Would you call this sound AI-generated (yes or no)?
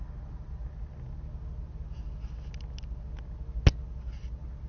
no